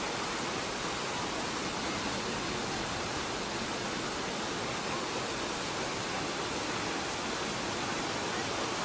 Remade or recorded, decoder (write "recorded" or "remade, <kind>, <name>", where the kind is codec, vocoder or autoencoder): recorded